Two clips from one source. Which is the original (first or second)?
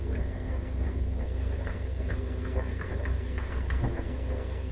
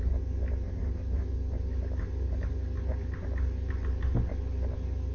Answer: second